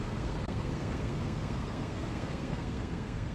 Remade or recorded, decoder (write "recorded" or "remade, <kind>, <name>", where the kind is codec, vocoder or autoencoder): remade, codec, SNAC